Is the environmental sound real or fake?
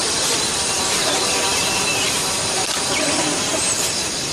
fake